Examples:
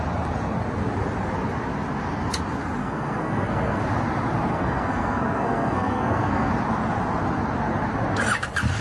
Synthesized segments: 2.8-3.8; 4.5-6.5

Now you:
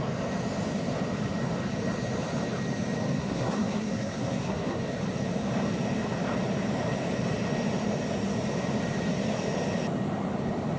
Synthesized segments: 3.1-4.8

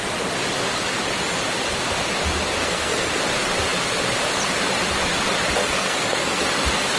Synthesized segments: 2.6-3.2; 5.6-6.4

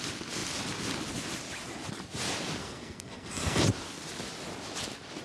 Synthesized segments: 2.6-3.6